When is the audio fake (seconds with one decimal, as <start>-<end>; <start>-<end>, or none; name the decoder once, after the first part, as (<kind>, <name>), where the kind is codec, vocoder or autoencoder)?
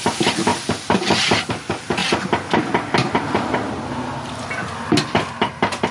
0.0-2.0 (vocoder, BigVGAN v2); 5.5-5.9